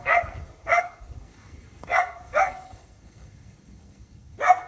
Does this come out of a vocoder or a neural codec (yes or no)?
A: yes